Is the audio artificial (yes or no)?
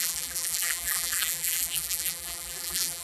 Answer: yes